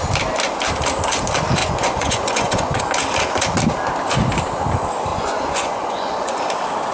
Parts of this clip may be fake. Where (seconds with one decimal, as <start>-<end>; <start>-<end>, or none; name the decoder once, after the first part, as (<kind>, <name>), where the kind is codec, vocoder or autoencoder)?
1.6-2.8 (vocoder, Vocos); 5.1-6.4